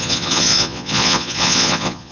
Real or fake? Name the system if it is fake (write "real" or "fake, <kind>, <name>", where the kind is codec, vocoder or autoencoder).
fake, vocoder, Vocos